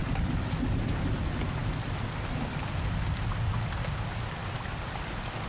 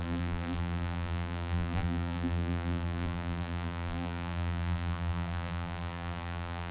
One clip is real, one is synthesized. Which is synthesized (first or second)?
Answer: second